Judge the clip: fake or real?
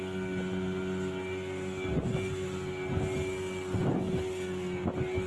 real